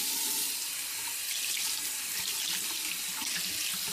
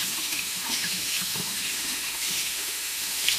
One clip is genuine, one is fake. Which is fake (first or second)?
second